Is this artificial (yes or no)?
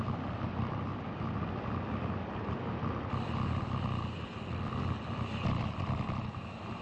no